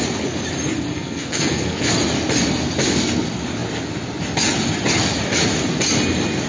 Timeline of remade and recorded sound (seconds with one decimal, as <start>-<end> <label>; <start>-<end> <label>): 0.0-0.9 recorded; 0.9-1.9 remade; 1.9-6.5 recorded